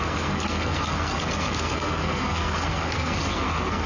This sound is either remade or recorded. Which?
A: remade